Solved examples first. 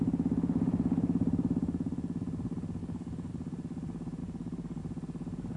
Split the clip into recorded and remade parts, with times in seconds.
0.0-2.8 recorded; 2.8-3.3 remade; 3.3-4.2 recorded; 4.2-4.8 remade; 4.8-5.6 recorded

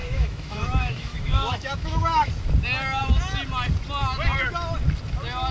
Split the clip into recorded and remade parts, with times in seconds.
0.0-2.3 remade; 2.3-5.5 recorded

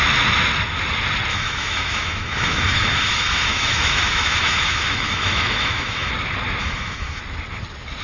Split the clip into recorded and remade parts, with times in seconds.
0.0-1.3 recorded; 1.3-6.1 remade; 6.1-6.6 recorded; 6.6-7.2 remade; 7.2-8.0 recorded

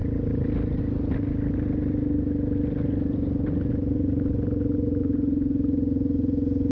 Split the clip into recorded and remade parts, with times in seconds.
0.0-6.7 recorded

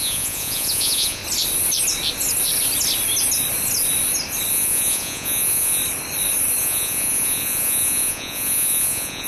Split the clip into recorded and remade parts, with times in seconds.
0.0-1.2 remade; 1.2-4.5 recorded; 4.5-5.8 remade; 5.8-6.6 recorded; 6.6-9.3 remade

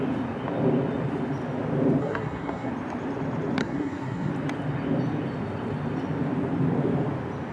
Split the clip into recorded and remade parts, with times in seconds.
0.0-2.0 recorded; 2.0-2.7 remade; 2.7-3.6 recorded; 3.6-4.3 remade; 4.3-7.5 recorded